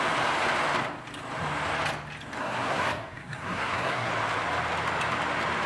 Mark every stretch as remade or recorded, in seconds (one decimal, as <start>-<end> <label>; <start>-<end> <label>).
0.0-2.4 recorded; 2.4-4.1 remade; 4.1-5.7 recorded